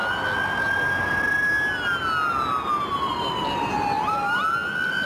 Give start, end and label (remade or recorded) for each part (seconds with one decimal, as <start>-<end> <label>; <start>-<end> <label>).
0.0-5.1 recorded